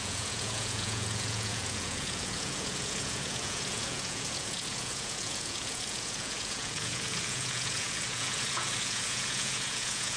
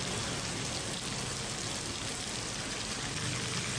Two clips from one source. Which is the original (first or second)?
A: second